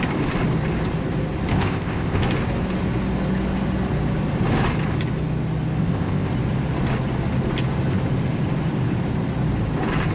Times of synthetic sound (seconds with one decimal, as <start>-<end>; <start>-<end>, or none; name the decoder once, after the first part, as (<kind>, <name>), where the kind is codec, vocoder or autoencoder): 1.5-2.2 (codec, ZipCodec); 5.8-6.3